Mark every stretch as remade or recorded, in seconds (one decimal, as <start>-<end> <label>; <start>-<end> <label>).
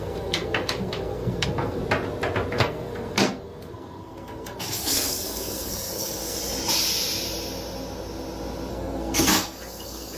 0.0-1.8 remade; 1.8-2.5 recorded; 2.5-6.4 remade; 6.4-8.7 recorded; 8.7-10.2 remade